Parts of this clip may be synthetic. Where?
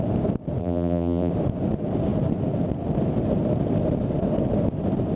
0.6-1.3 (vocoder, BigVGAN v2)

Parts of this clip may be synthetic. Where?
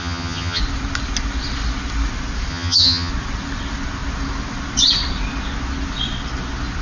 0.0-0.6 (vocoder, HiFi-GAN); 2.5-3.1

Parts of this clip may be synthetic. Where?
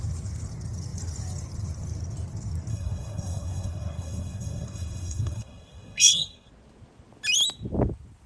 2.7-6.5 (codec, SNAC)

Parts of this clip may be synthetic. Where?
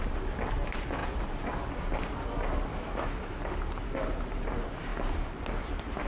2.7-3.4 (autoencoder, DAC-VAE)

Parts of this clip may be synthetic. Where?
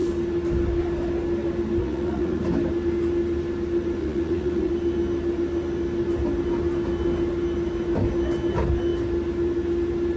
1.8-2.4 (vocoder, Vocos); 4.0-4.7